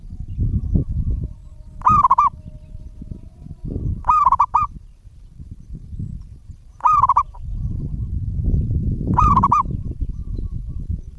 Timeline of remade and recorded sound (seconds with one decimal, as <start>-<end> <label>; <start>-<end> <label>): 0.0-1.4 remade; 1.4-4.0 recorded; 4.0-11.2 remade